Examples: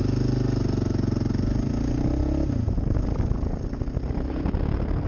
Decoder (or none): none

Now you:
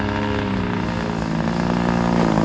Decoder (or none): none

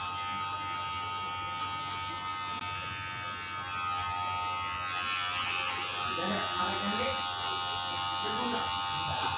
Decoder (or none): none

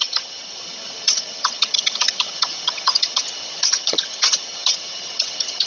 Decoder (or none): vocoder, HiFi-GAN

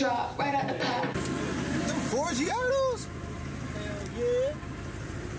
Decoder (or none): none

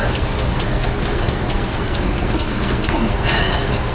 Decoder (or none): codec, SNAC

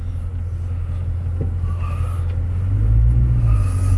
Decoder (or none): none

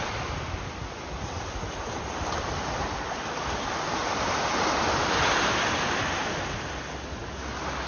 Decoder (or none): none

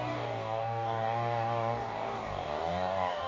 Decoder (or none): codec, DAC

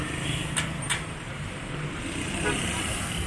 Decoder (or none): vocoder, BigVGAN v2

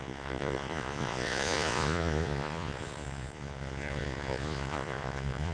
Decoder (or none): vocoder, Vocos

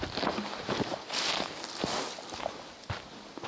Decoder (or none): none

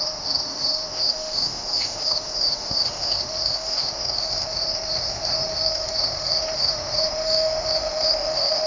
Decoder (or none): autoencoder, DAC-VAE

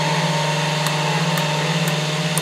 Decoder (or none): none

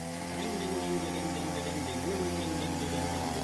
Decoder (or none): vocoder, BigVGAN v2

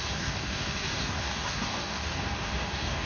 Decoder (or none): codec, DAC